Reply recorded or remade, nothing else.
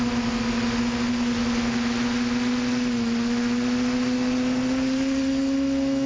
recorded